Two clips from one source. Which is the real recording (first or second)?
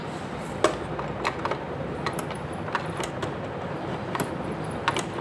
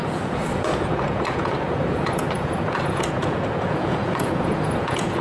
first